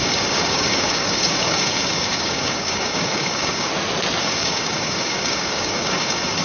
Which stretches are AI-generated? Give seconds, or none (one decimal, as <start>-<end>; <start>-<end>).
0.0-3.7; 4.2-6.4